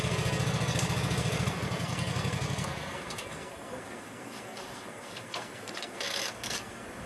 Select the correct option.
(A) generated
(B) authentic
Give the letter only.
A